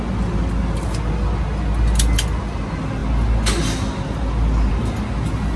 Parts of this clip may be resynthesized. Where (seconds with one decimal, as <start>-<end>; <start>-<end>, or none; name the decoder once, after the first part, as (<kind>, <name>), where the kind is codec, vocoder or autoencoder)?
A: none